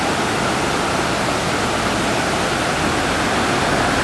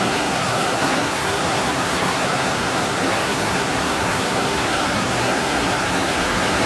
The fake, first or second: second